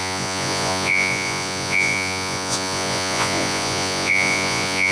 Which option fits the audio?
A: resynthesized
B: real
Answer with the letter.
A